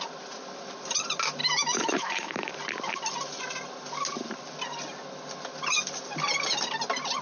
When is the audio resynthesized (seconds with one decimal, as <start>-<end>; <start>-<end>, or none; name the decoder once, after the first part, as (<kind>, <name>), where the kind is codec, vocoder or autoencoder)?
1.4-2.5 (autoencoder, DAC-VAE)